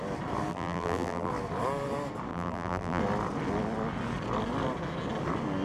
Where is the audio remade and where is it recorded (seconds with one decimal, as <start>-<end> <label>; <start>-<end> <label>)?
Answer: 0.0-0.5 recorded; 0.5-1.3 remade; 1.3-2.3 recorded; 2.3-3.0 remade; 3.0-5.6 recorded